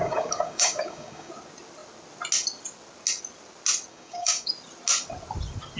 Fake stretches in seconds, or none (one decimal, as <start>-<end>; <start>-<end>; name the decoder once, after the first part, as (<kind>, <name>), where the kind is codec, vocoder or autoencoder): 0.0-1.3 (codec, DAC); 3.9-4.5